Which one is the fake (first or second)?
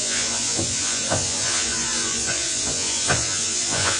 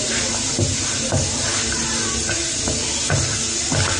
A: first